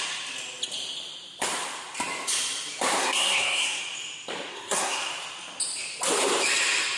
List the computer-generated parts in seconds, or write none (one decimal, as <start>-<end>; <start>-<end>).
3.0-3.8; 4.5-5.1